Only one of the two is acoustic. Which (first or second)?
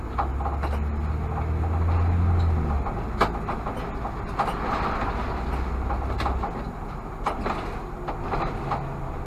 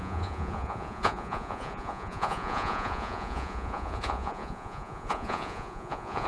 first